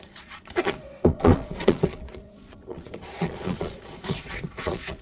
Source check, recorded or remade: remade